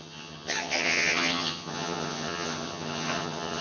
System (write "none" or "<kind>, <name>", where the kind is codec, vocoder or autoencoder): vocoder, HiFi-GAN